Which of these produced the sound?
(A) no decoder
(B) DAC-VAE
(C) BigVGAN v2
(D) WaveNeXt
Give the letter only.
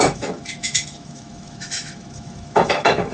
B